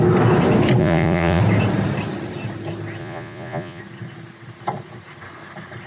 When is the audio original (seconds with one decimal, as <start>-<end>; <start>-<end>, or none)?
0.0-0.8; 1.4-3.0; 3.8-5.9